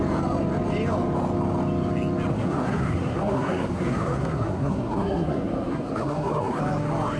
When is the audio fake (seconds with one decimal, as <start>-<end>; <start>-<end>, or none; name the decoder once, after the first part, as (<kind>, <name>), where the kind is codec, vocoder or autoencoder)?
2.3-6.6 (codec, SNAC)